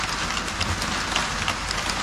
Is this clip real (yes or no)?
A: yes